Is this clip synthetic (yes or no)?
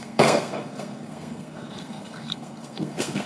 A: yes